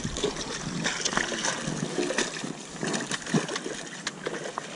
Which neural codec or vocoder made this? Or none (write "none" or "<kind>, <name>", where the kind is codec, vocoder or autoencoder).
none